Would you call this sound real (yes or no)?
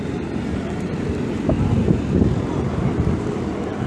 no